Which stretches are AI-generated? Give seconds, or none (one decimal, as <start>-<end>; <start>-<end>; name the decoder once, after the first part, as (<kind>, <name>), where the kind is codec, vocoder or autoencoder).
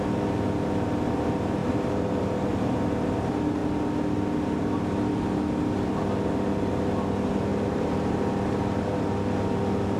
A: 1.6-2.5 (vocoder, BigVGAN v2); 7.5-8.3